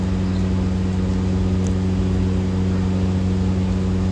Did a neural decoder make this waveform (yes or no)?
no